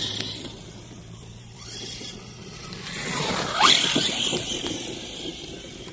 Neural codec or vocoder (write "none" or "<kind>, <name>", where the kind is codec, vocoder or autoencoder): vocoder, BigVGAN v2